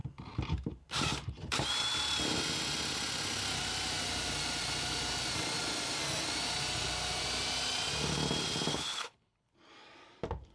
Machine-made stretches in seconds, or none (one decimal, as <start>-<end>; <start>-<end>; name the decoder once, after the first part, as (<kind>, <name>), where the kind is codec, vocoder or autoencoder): 8.7-9.5 (codec, HILCodec)